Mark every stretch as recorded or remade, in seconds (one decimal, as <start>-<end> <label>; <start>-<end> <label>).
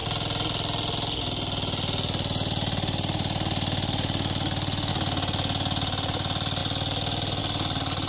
0.0-8.1 recorded